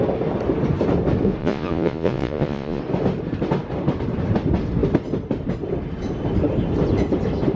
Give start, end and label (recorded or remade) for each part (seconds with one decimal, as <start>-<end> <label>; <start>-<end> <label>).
0.0-1.4 recorded; 1.4-2.8 remade; 2.8-7.6 recorded